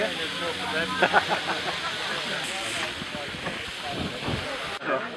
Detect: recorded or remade recorded